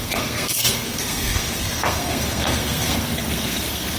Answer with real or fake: fake